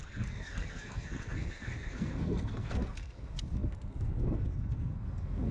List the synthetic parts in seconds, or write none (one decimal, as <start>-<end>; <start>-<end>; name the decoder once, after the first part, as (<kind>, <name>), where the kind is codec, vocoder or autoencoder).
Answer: 0.0-5.5 (codec, SNAC)